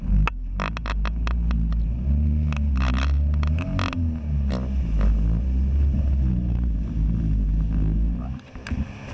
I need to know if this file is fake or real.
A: real